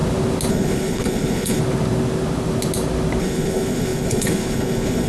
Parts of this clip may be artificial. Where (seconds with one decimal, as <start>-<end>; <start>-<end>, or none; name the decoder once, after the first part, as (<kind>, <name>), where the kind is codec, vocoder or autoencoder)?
0.5-1.6 (codec, HILCodec); 3.2-5.1